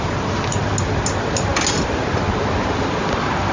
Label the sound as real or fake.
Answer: real